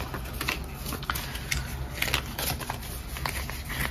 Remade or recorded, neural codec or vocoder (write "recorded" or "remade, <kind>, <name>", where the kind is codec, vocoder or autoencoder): recorded